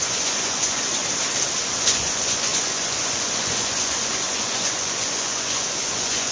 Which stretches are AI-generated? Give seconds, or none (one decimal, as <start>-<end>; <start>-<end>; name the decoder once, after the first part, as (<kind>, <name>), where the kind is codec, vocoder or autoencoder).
0.0-1.0 (vocoder, Vocos); 1.6-6.3